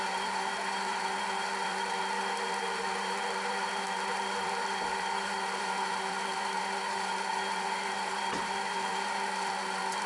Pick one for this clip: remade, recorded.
remade